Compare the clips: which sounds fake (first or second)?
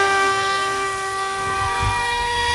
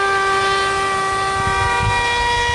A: first